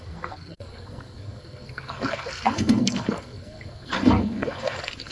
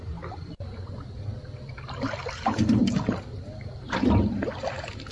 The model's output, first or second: first